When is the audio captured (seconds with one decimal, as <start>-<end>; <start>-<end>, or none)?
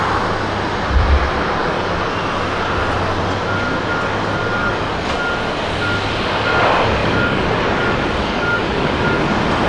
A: 0.0-1.6; 2.1-4.6; 5.3-7.0; 8.9-9.7